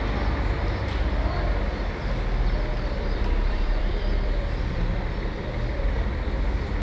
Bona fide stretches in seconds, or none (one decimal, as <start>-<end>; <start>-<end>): 0.0-2.7; 5.8-6.8